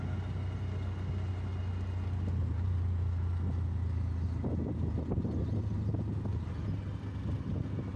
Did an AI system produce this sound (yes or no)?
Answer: no